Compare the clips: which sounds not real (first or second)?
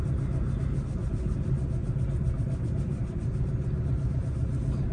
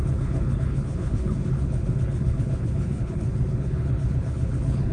second